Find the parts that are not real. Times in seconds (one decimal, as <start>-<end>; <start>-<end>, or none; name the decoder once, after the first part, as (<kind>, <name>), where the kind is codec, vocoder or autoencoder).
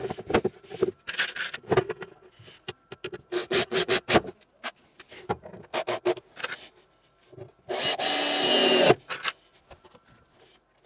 3.4-4.0 (vocoder, Vocos)